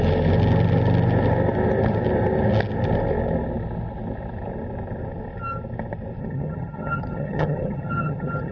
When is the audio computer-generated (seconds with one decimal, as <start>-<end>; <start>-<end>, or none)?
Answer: 6.2-8.5